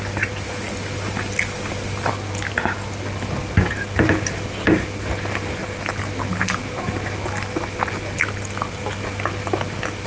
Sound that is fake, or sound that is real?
real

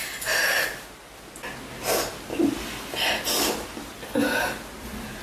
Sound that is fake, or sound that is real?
real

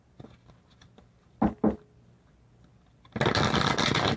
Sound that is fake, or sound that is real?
real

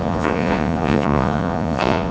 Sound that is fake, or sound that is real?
fake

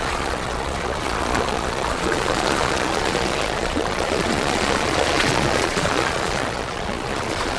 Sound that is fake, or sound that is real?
fake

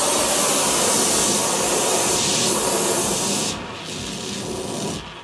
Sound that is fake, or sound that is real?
real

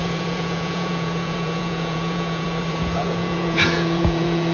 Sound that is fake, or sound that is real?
fake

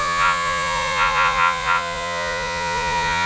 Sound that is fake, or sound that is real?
fake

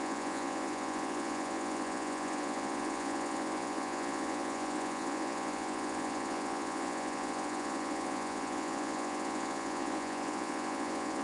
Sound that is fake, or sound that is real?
fake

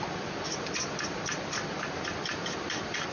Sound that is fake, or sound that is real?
real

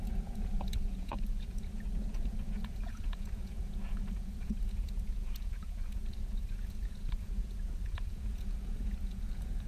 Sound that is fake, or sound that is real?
fake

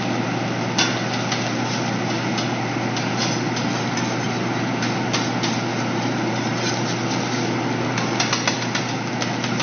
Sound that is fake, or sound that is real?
real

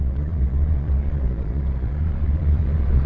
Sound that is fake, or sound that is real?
fake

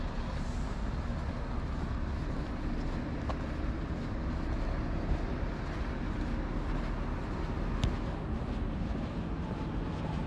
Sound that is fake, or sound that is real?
real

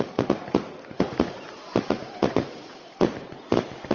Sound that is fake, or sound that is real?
fake